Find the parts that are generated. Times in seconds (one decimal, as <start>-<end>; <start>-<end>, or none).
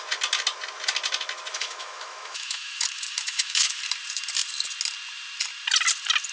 1.5-3.8